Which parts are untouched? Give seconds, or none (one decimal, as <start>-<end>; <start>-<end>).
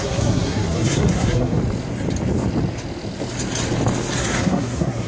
1.6-4.2